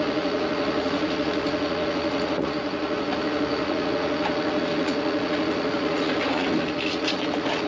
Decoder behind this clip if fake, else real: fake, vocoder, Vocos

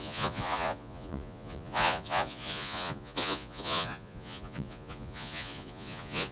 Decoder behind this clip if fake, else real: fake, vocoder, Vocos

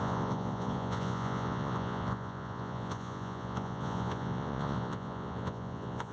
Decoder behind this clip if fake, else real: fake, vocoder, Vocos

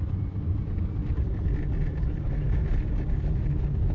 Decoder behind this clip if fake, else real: real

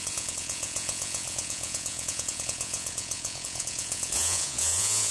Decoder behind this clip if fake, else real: fake, vocoder, Vocos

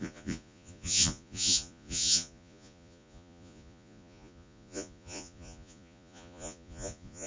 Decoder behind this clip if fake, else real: fake, vocoder, Vocos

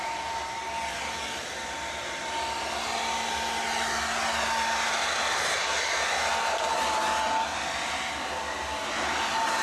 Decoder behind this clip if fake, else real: real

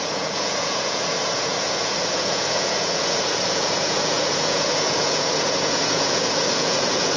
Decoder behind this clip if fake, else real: fake, vocoder, Vocos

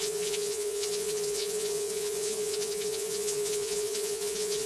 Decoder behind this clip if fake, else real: fake, vocoder, Vocos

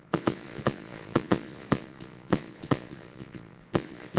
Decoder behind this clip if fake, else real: fake, vocoder, Vocos